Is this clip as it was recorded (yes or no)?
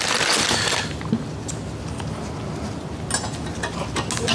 yes